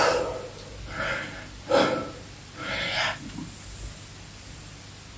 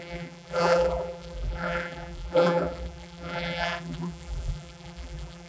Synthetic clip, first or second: second